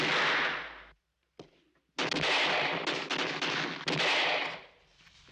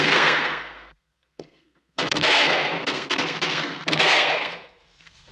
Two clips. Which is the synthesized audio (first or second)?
second